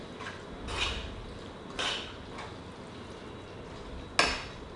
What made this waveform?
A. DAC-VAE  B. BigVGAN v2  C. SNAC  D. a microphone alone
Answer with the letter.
D